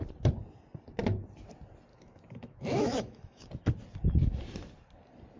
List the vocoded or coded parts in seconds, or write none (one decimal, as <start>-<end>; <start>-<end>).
1.9-3.5